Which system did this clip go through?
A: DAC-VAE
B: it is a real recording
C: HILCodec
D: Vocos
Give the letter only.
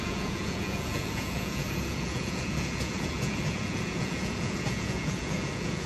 D